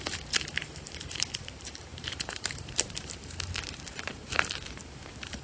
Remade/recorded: remade